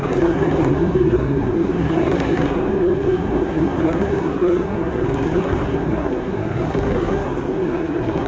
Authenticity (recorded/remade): remade